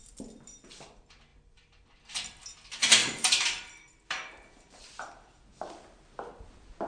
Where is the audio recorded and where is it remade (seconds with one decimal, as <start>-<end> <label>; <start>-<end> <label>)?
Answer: 0.0-1.3 recorded; 1.3-2.4 remade; 2.4-3.0 recorded; 3.0-5.5 remade; 5.5-6.9 recorded